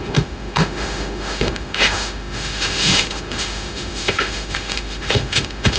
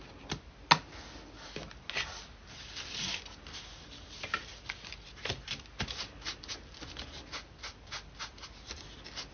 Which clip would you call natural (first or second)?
second